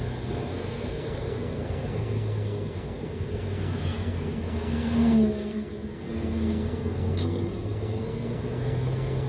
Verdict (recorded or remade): remade